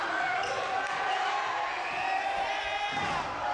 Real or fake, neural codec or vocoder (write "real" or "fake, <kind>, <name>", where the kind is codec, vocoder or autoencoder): real